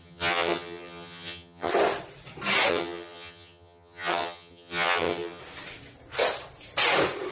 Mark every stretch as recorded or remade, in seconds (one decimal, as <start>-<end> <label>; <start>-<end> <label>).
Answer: 0.0-1.7 remade; 1.7-2.7 recorded; 2.7-5.4 remade; 5.4-7.3 recorded